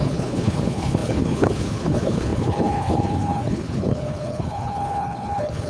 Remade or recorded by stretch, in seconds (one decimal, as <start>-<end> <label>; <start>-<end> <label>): 0.0-5.7 remade